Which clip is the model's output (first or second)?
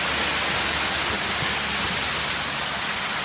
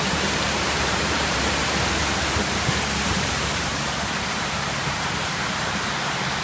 second